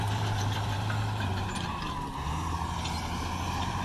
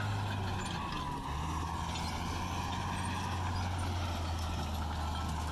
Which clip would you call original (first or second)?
second